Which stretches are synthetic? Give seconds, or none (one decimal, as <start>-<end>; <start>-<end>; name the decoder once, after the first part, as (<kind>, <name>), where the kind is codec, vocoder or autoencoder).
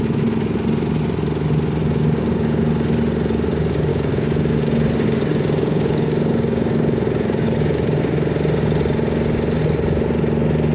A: 1.8-2.6 (codec, DAC); 3.9-8.0